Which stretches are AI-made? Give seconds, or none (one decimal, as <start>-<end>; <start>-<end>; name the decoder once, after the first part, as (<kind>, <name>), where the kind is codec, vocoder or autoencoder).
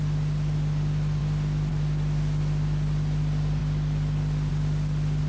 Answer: none